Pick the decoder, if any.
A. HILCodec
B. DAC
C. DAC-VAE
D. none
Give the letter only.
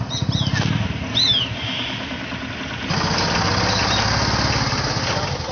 D